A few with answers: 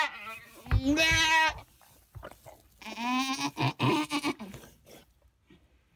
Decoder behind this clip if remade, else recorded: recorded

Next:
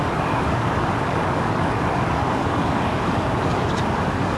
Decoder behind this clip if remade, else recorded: remade, codec, DAC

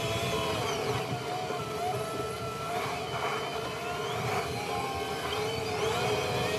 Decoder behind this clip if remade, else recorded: recorded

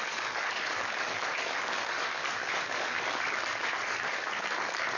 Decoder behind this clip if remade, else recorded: remade, codec, DAC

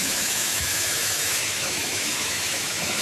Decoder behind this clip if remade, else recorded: remade, autoencoder, DAC-VAE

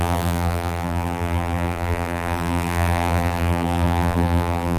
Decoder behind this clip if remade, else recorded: remade, vocoder, BigVGAN v2